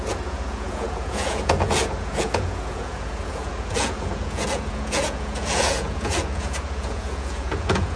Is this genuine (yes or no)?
no